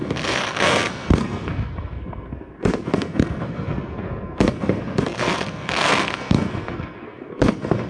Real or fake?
fake